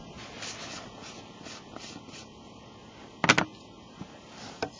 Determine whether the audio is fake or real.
real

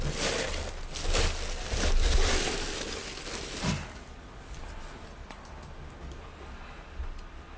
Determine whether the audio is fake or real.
real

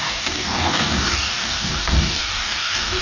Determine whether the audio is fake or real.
fake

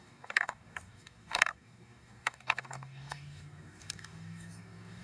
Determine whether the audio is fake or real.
fake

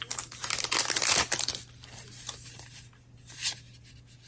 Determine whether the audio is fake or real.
real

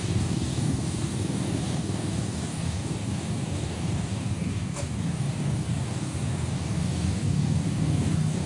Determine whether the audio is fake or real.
fake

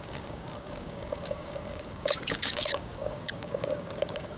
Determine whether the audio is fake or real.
fake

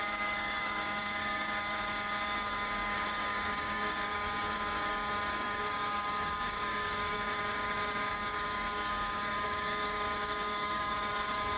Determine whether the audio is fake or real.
fake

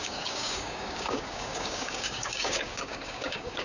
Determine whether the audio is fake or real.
fake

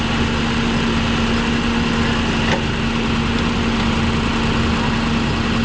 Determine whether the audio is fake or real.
real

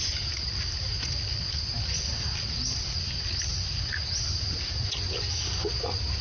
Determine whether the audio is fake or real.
real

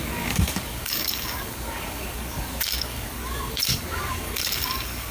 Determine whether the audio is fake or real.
fake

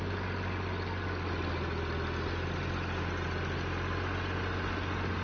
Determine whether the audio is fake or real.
real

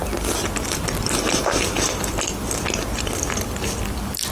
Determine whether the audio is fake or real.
real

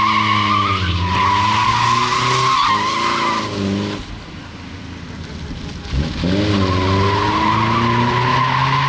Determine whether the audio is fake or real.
real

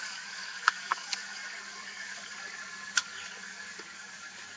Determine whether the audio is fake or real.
fake